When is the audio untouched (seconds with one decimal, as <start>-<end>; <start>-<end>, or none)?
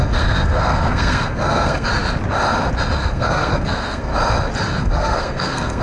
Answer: 1.9-3.0; 4.1-4.8